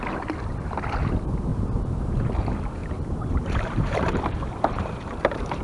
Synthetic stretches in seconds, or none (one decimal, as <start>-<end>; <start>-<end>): 1.5-2.3; 2.8-5.6